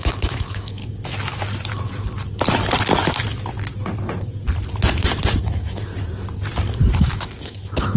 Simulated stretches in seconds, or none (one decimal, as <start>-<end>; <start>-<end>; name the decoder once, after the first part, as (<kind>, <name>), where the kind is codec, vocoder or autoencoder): 0.0-0.8 (autoencoder, DAC-VAE); 5.4-5.9; 7.0-8.0